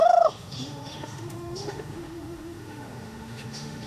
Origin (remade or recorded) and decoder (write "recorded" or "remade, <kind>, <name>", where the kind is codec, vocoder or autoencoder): remade, autoencoder, DAC-VAE